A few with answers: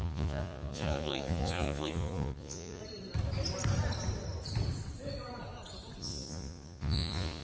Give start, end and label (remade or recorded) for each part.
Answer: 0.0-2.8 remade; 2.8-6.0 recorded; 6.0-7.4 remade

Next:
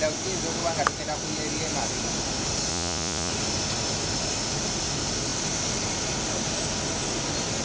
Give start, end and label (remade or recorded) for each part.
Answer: 0.0-2.7 recorded; 2.7-3.3 remade; 3.3-7.6 recorded

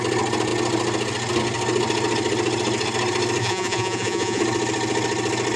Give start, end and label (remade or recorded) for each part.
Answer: 0.0-3.4 recorded; 3.4-4.4 remade; 4.4-5.6 recorded